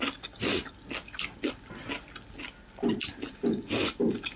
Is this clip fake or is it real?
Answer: real